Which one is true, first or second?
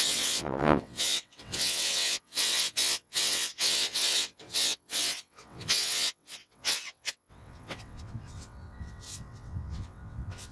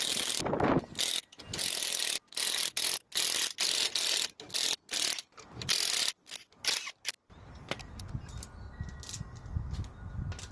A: second